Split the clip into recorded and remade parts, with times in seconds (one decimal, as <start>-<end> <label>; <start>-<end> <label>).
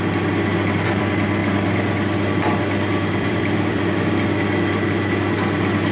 0.0-5.9 remade